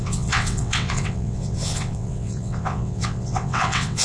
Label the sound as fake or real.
fake